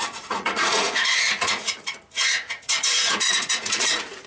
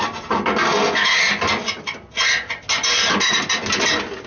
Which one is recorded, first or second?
second